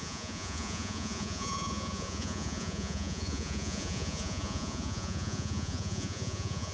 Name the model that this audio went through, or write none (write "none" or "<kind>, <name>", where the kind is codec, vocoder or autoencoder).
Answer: vocoder, Vocos